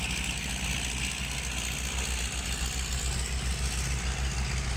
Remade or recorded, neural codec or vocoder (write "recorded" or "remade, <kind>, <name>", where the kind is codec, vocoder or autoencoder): recorded